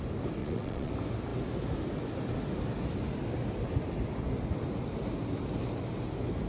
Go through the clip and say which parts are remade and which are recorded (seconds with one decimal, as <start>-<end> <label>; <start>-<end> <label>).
0.0-0.4 recorded; 0.4-0.9 remade; 0.9-6.5 recorded